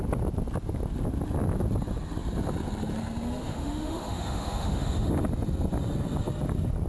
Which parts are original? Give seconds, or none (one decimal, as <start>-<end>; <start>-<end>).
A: 0.0-3.4; 5.1-6.9

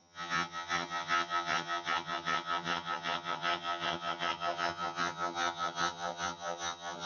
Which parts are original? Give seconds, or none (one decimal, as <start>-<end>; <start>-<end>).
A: none

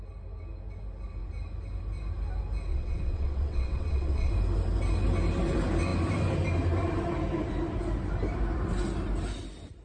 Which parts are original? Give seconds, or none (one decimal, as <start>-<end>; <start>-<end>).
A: 0.0-2.7; 4.3-9.8

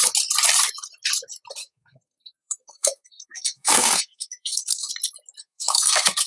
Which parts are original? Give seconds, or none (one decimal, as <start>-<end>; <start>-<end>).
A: 0.0-1.6; 4.9-5.4

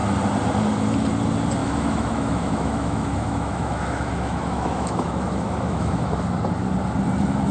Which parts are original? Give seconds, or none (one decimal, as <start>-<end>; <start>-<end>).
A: 0.0-1.6; 6.1-7.5

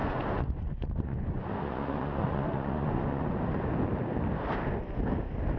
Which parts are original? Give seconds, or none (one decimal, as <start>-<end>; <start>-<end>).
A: 3.4-5.6